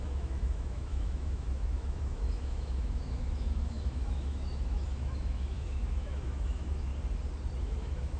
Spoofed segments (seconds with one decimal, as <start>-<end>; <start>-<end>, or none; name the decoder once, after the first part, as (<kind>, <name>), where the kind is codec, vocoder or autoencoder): 0.0-6.9 (autoencoder, DAC-VAE); 7.6-8.2